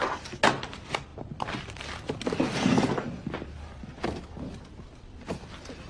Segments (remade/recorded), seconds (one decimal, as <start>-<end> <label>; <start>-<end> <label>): 0.0-5.9 recorded